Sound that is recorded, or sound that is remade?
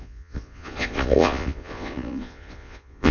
remade